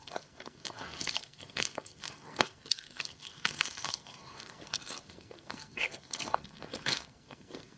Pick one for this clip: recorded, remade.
remade